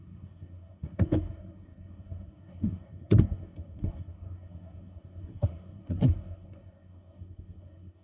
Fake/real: fake